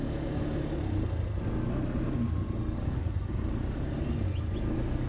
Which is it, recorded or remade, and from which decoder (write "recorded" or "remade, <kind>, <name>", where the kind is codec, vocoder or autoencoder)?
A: recorded